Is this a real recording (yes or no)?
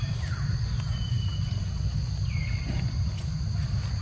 yes